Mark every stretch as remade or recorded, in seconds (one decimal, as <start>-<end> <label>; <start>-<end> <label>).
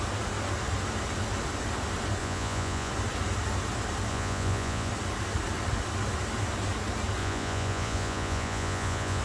0.0-2.2 recorded; 2.2-2.9 remade; 2.9-4.1 recorded; 4.1-4.9 remade; 4.9-7.2 recorded; 7.2-9.2 remade